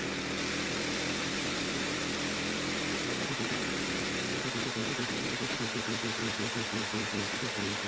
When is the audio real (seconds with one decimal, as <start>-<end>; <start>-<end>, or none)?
0.0-1.2; 2.0-4.8; 5.8-6.2; 7.2-7.9